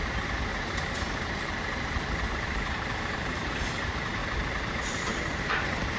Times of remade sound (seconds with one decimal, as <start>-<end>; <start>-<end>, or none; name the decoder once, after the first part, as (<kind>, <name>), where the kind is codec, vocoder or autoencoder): 0.5-3.6 (vocoder, BigVGAN v2); 4.2-6.0